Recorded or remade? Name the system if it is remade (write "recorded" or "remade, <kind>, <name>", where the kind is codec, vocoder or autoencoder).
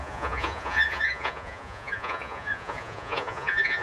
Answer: remade, vocoder, Vocos